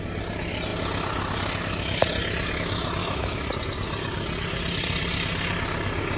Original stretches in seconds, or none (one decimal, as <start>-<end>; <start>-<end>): 0.0-3.0; 3.5-6.2